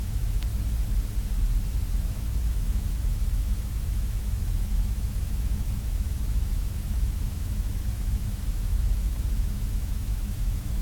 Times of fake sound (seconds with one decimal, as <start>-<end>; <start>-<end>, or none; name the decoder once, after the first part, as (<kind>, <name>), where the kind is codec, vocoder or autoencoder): 0.0-0.5 (autoencoder, DAC-VAE); 2.0-10.8